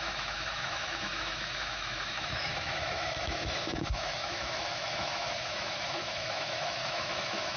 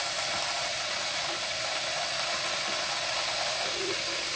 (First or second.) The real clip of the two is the second